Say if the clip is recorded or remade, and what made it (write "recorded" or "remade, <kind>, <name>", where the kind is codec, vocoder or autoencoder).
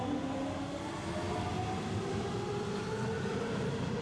recorded